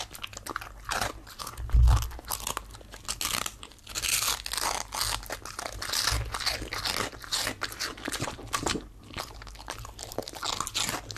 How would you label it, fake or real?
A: real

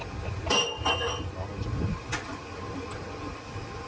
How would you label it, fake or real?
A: real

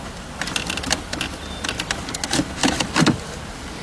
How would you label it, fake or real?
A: real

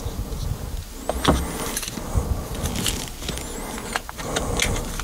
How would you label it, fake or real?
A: real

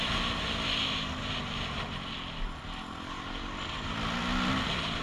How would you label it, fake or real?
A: real